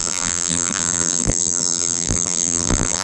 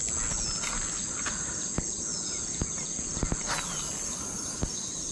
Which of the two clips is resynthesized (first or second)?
first